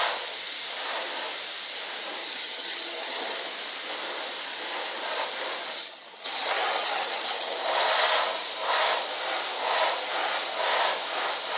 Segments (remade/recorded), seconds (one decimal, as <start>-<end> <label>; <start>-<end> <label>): 0.0-2.2 recorded; 2.2-3.4 remade; 3.4-5.8 recorded; 5.8-7.6 remade; 7.6-11.6 recorded